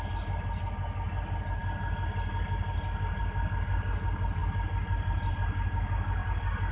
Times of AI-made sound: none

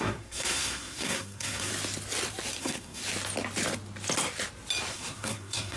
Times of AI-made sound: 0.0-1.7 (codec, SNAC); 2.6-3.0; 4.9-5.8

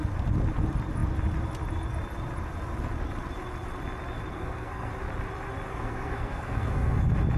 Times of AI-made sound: 4.3-4.9 (codec, SNAC); 5.7-7.0

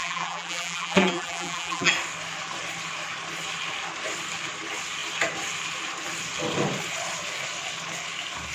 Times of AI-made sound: 0.0-1.9 (vocoder, BigVGAN v2)